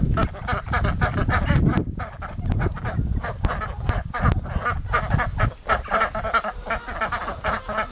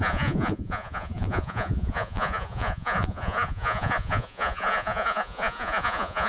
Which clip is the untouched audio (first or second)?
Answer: first